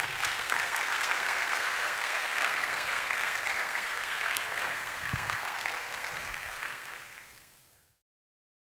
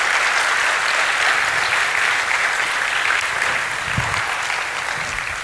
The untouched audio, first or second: second